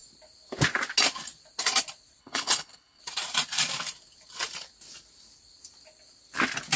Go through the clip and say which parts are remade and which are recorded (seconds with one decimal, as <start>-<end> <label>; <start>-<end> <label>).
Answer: 0.0-2.2 recorded; 2.2-3.0 remade; 3.0-6.8 recorded